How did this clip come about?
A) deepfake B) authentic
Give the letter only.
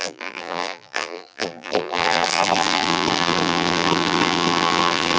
A